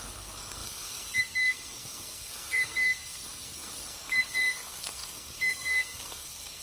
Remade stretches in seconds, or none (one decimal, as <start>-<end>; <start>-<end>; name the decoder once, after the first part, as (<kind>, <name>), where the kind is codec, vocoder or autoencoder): 0.0-6.6 (codec, SNAC)